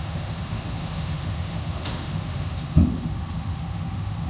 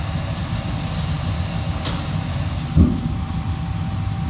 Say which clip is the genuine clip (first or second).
second